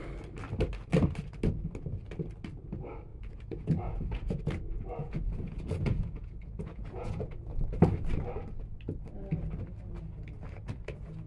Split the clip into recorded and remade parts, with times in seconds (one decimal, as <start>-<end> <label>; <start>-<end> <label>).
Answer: 0.0-3.1 recorded; 3.1-4.4 remade; 4.4-5.0 recorded; 5.0-7.6 remade; 7.6-11.3 recorded